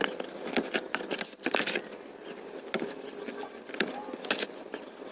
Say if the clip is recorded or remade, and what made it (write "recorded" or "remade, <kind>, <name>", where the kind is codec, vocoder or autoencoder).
recorded